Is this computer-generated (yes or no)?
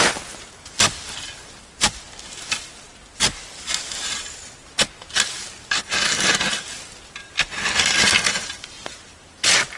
no